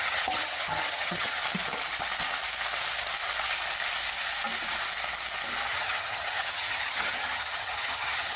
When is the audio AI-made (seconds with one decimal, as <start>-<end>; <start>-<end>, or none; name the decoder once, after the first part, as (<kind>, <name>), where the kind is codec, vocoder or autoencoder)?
0.0-1.4 (vocoder, HiFi-GAN); 5.7-8.4

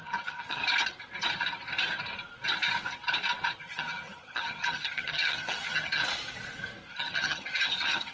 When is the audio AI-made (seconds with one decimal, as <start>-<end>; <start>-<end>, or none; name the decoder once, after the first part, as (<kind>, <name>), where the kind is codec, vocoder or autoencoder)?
0.0-0.6 (vocoder, HiFi-GAN); 3.6-6.0; 6.9-8.1

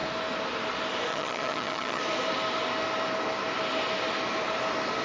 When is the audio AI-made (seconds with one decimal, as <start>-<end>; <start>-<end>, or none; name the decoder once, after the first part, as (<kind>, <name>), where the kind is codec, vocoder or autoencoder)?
1.1-2.0 (vocoder, HiFi-GAN)

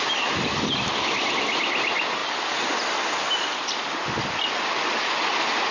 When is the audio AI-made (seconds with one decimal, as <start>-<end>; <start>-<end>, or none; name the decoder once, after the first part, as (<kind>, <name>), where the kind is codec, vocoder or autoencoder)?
none

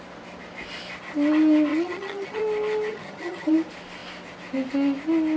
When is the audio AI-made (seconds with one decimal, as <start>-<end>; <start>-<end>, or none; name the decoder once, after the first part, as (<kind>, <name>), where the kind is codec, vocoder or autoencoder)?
1.7-2.4 (vocoder, HiFi-GAN); 2.9-3.5

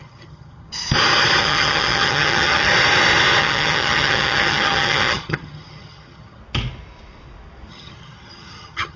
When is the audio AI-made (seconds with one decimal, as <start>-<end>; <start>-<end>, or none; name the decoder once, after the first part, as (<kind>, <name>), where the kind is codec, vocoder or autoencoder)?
0.0-0.7 (vocoder, HiFi-GAN); 1.4-2.7; 3.4-6.4; 7.7-9.0

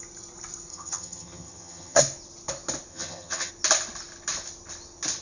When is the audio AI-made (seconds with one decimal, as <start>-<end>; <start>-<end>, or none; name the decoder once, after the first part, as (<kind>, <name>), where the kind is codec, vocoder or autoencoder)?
0.7-2.0 (vocoder, HiFi-GAN); 2.9-3.5

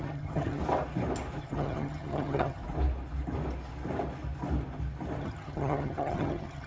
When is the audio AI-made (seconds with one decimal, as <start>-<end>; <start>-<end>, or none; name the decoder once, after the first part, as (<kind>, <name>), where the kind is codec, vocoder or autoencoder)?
0.0-0.6 (vocoder, HiFi-GAN); 1.4-2.6; 5.2-6.7